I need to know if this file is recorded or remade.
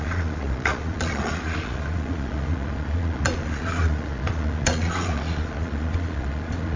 remade